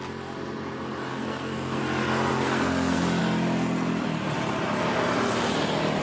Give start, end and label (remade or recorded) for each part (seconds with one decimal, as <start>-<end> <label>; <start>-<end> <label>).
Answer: 0.0-1.1 recorded; 1.1-1.8 remade; 1.8-2.3 recorded; 2.3-3.2 remade; 3.2-6.0 recorded